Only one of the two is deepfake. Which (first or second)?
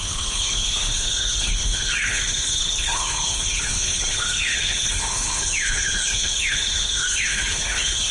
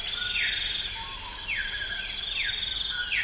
first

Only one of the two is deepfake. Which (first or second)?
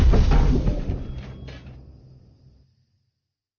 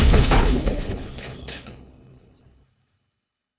second